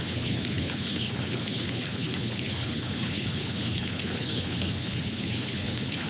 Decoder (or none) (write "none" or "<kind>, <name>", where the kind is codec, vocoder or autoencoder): codec, HILCodec